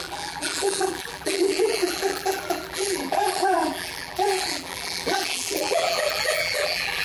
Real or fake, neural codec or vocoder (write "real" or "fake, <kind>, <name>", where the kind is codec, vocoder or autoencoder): fake, vocoder, BigVGAN v2